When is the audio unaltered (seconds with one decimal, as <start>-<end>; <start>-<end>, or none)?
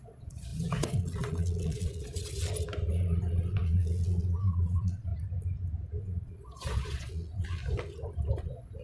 2.4-2.9; 5.1-6.0; 7.6-8.4